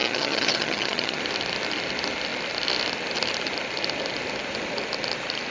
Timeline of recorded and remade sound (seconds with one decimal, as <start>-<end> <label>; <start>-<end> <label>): 0.0-1.2 remade; 1.2-5.5 recorded

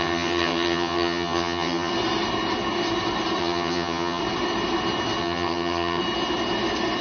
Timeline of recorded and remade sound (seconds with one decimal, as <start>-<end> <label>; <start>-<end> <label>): 0.0-1.9 remade; 1.9-3.4 recorded; 3.4-4.2 remade; 4.2-5.2 recorded; 5.2-6.0 remade; 6.0-7.0 recorded